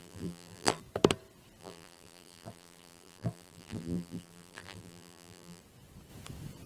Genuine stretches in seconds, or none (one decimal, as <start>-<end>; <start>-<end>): 0.8-1.6; 5.6-6.7